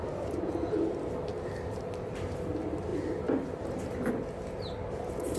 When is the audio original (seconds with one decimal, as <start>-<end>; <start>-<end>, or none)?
0.0-5.4